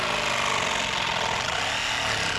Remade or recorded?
recorded